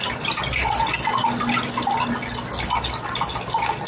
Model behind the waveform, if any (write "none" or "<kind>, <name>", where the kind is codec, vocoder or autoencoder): none